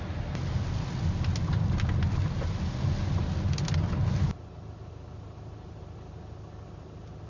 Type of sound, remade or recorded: recorded